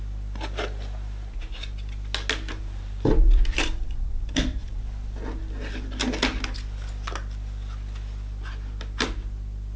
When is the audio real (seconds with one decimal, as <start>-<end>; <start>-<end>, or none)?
0.0-2.5; 4.8-9.8